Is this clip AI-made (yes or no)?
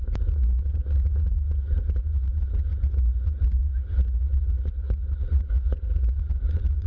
yes